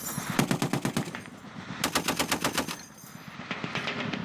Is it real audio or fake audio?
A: real